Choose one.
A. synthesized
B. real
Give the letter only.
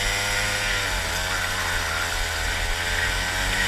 B